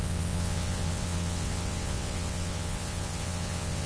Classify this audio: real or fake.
fake